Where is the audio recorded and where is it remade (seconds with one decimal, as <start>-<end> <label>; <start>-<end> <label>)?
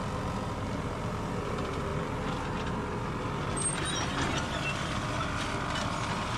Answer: 0.0-6.4 recorded